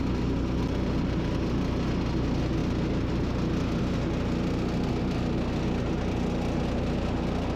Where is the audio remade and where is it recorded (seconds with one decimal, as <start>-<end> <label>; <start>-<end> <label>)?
0.0-7.6 recorded